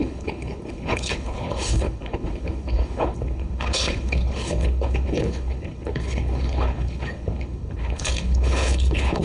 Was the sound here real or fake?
fake